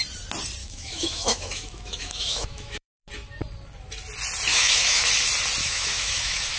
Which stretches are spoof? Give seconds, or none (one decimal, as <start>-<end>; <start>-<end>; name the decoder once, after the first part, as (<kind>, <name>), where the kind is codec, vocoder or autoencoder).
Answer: 0.6-3.1 (autoencoder, DAC-VAE); 4.5-5.1; 5.6-6.6